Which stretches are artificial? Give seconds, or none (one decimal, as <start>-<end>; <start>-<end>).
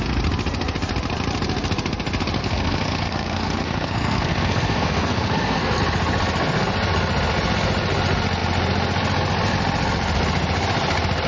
2.4-5.8